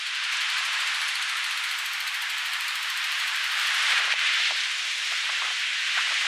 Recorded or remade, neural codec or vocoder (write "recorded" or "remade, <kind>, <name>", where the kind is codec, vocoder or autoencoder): remade, vocoder, BigVGAN v2